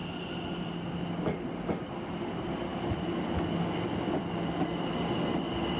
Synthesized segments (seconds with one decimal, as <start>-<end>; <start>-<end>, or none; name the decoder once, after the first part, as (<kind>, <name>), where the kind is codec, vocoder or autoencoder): none